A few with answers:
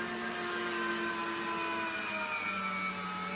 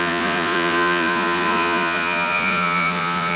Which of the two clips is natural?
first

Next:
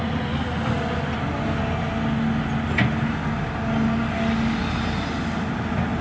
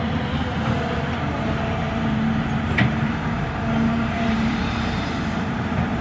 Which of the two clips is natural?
first